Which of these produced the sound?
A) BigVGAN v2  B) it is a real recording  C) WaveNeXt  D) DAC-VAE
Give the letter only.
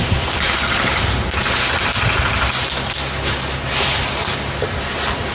B